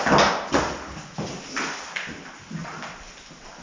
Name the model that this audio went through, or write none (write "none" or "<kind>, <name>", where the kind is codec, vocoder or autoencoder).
none